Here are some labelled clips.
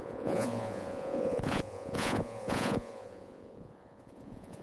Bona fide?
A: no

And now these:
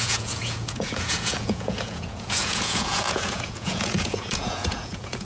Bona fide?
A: no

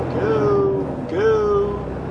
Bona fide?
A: yes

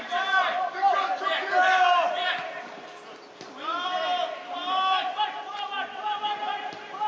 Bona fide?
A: yes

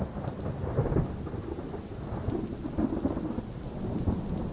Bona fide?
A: yes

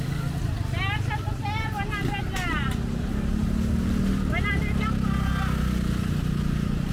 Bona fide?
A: yes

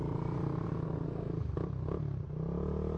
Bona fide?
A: yes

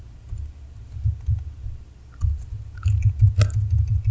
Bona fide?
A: yes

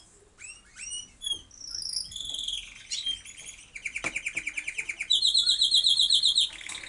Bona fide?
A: yes